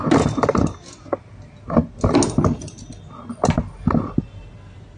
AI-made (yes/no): no